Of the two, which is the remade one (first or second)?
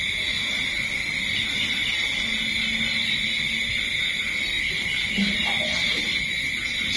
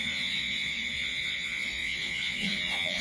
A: second